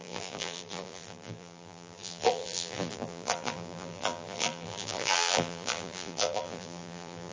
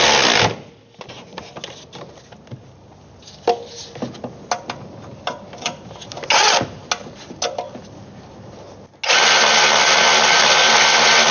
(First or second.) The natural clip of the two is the second